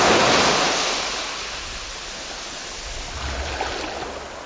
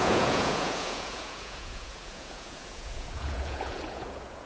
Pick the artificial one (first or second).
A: second